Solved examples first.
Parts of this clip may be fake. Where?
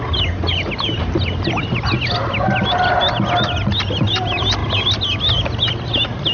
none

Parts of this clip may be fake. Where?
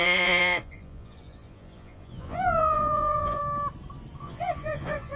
0.0-3.4 (vocoder, Vocos); 4.2-5.2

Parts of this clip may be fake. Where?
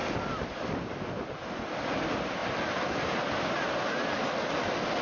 0.0-1.1 (vocoder, BigVGAN v2)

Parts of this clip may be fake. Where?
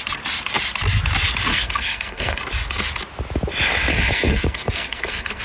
1.5-2.4 (codec, SNAC); 3.9-5.4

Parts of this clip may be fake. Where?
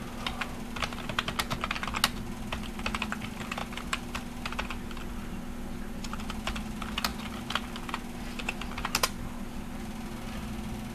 none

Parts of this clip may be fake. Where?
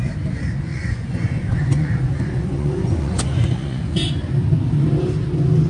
0.7-4.1 (vocoder, Vocos)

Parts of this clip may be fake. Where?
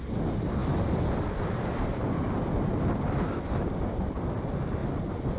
0.6-3.8 (vocoder, BigVGAN v2); 4.8-5.4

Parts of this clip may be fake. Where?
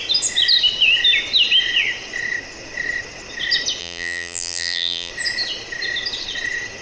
3.8-5.1 (vocoder, BigVGAN v2)